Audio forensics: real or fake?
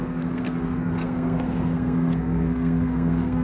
fake